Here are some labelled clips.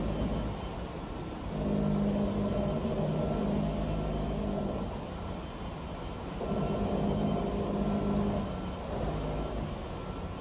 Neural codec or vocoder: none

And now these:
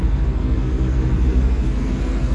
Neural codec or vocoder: codec, SNAC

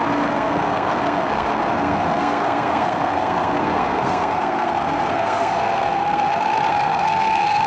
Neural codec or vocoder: codec, SNAC